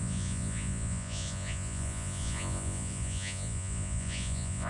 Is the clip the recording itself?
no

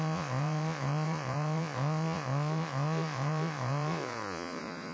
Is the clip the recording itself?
no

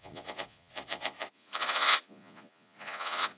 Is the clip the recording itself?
no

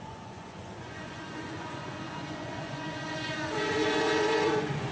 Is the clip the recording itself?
no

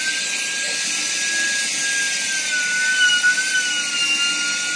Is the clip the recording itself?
yes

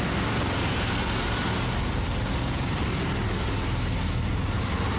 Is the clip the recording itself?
yes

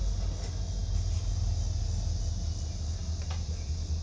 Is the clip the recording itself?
yes